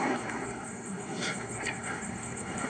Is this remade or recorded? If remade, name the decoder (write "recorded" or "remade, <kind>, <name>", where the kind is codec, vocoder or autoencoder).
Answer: remade, codec, SNAC